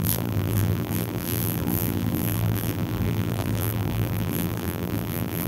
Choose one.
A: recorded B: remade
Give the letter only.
B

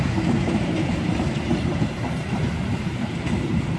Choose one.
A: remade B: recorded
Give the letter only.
A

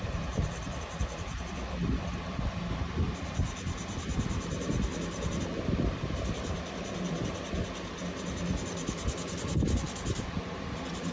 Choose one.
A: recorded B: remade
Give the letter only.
B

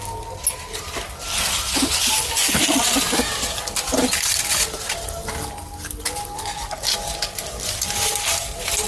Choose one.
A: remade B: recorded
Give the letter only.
B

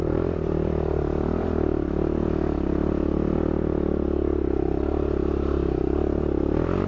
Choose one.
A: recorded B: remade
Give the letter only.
B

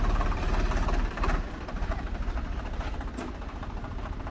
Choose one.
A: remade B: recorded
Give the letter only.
A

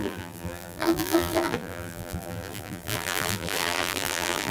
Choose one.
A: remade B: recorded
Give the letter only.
A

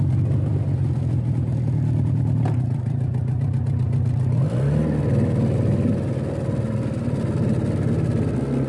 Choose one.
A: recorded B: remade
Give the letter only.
A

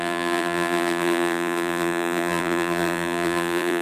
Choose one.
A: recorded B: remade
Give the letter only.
B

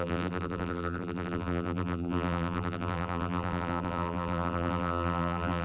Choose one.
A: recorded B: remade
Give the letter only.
B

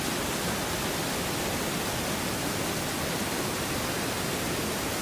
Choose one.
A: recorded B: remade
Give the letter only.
A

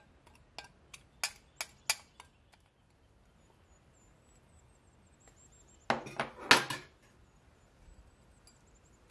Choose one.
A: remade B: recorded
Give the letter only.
B